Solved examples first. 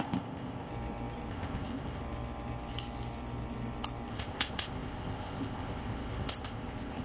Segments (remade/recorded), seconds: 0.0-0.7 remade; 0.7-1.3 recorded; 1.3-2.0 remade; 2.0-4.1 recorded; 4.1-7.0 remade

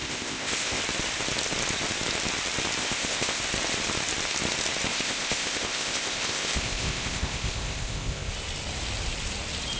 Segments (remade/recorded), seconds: 0.0-0.8 remade; 0.8-2.8 recorded; 2.8-3.4 remade; 3.4-4.9 recorded; 4.9-8.3 remade; 8.3-9.8 recorded